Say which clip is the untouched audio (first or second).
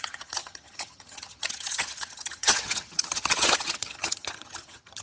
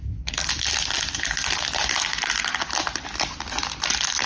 second